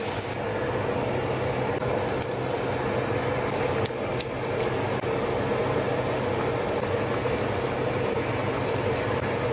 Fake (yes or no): no